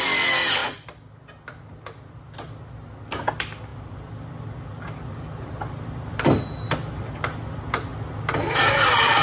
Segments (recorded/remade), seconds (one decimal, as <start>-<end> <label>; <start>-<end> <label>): 0.0-0.6 remade; 0.6-3.3 recorded; 3.3-7.9 remade; 7.9-8.7 recorded; 8.7-9.2 remade